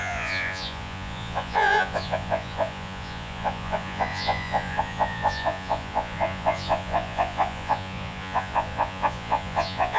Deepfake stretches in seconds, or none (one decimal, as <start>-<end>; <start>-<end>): 0.0-10.0